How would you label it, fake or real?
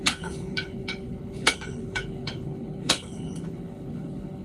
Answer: fake